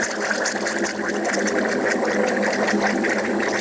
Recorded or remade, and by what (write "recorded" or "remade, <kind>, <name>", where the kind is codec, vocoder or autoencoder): recorded